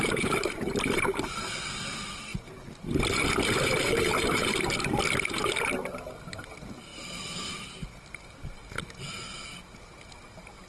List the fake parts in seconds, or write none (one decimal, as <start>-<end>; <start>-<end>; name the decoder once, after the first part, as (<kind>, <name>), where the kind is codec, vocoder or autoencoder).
none